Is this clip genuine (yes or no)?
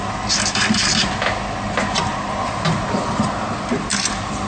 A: yes